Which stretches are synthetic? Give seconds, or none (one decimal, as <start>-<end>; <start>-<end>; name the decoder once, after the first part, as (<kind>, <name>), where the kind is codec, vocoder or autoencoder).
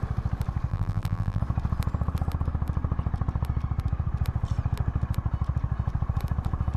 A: 0.7-1.4 (vocoder, BigVGAN v2)